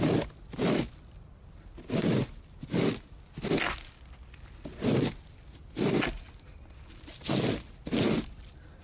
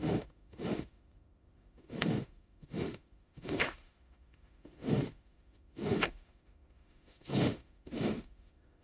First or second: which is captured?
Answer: first